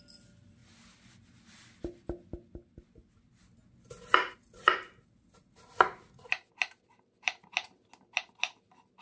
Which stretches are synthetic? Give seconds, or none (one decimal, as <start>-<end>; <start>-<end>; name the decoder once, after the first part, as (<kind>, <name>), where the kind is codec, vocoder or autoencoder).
none